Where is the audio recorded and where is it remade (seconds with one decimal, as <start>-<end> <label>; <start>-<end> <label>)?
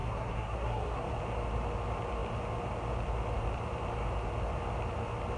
0.0-1.1 remade; 1.1-5.4 recorded